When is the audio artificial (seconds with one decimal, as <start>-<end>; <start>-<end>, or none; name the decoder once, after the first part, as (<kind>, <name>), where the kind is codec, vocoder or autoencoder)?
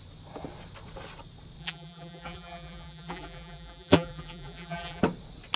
1.6-5.0 (vocoder, BigVGAN v2)